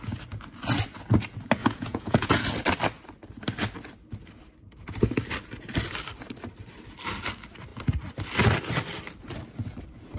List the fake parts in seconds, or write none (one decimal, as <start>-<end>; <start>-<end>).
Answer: 1.6-2.3